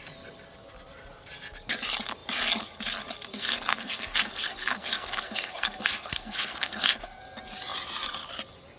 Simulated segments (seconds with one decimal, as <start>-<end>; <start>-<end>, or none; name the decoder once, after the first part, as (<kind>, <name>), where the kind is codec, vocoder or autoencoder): 3.3-7.2 (codec, SNAC)